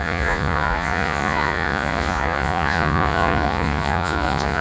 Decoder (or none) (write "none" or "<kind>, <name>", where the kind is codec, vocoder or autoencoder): vocoder, Vocos